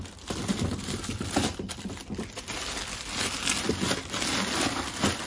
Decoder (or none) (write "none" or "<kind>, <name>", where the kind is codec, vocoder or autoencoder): none